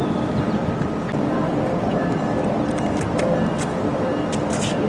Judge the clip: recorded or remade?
remade